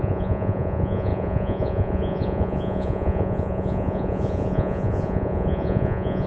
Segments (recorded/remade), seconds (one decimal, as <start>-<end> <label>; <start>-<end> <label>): 0.0-6.3 remade

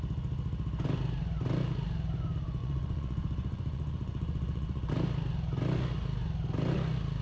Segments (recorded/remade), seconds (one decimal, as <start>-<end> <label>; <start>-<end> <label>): 0.0-2.6 recorded; 2.6-4.9 remade; 4.9-7.2 recorded

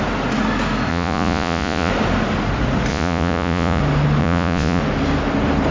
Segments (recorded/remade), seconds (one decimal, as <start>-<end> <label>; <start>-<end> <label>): 0.0-0.9 recorded; 0.9-1.9 remade; 1.9-2.9 recorded; 2.9-3.8 remade; 3.8-4.2 recorded; 4.2-4.8 remade; 4.8-5.7 recorded